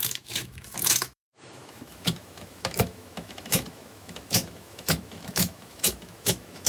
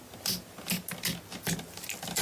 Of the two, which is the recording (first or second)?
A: second